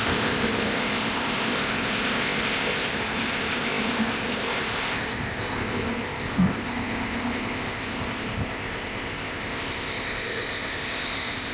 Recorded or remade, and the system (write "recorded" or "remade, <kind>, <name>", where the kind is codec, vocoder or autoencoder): remade, codec, ZipCodec